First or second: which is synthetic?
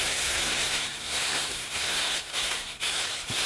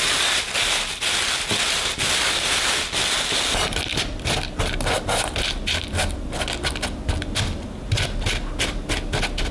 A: first